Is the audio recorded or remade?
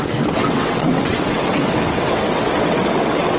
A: remade